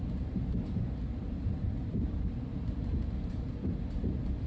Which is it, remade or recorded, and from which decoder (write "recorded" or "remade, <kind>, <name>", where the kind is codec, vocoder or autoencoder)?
remade, vocoder, BigVGAN v2